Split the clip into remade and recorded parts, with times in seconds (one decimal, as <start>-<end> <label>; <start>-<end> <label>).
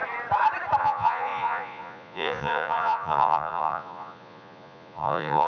0.0-0.8 recorded; 0.8-5.5 remade